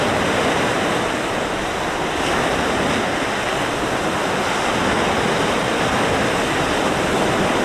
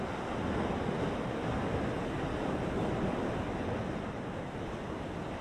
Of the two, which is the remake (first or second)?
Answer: first